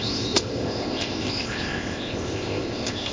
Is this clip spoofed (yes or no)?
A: yes